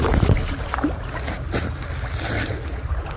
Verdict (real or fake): real